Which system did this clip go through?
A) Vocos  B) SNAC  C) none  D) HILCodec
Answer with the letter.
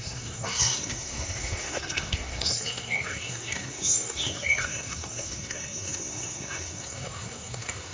B